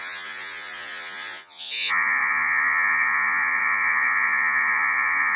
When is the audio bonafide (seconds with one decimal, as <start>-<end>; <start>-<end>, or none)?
none